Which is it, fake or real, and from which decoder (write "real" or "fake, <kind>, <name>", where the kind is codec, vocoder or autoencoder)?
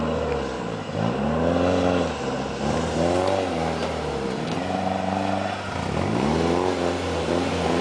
real